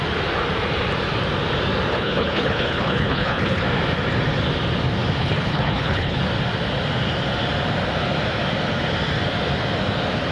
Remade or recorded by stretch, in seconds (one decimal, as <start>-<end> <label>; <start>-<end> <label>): 0.0-1.9 recorded; 1.9-3.6 remade; 3.6-5.2 recorded; 5.2-6.2 remade; 6.2-10.3 recorded